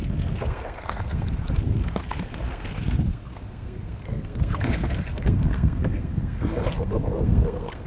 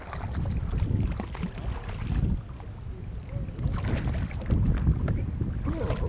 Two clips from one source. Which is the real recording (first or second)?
second